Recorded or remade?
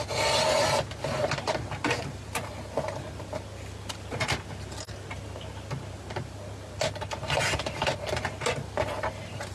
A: recorded